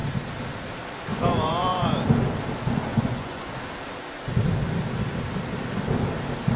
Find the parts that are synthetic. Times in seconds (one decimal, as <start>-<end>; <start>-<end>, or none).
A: 1.1-2.0; 2.9-3.5